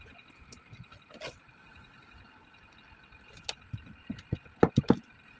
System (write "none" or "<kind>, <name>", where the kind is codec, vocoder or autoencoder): none